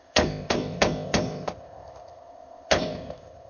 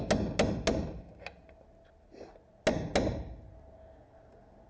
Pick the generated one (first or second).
first